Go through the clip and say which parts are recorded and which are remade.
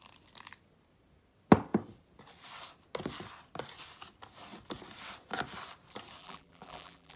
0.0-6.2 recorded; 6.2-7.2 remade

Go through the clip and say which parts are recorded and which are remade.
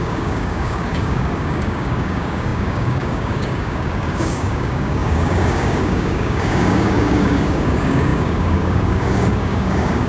0.0-10.1 remade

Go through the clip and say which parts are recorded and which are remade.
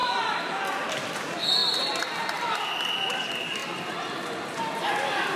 0.0-0.6 remade; 0.6-3.6 recorded; 3.6-4.8 remade; 4.8-5.4 recorded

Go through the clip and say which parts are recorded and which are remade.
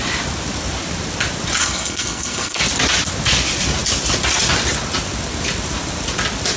0.0-1.6 recorded; 1.6-2.6 remade; 2.6-6.6 recorded